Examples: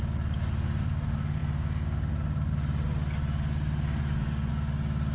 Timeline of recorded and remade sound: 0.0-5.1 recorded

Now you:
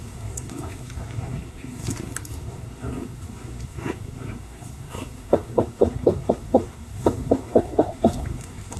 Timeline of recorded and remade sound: 0.0-8.8 remade

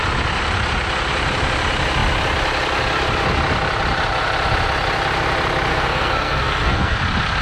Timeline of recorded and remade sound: 0.0-5.7 recorded; 5.7-7.0 remade; 7.0-7.4 recorded

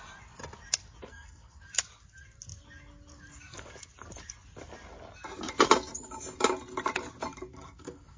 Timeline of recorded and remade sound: 0.0-1.1 recorded; 1.1-1.6 remade; 1.6-7.5 recorded; 7.5-8.2 remade

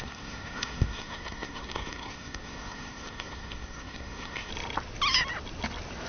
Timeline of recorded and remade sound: 0.0-4.5 remade; 4.5-6.1 recorded

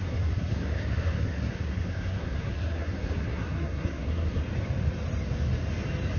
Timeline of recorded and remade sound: 0.0-4.4 remade; 4.4-6.2 recorded